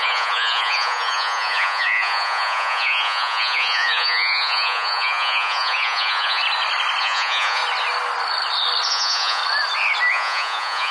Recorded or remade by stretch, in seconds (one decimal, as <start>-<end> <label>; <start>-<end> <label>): 0.0-6.4 remade; 6.4-7.0 recorded; 7.0-7.6 remade; 7.6-8.9 recorded; 8.9-9.4 remade; 9.4-10.1 recorded; 10.1-10.9 remade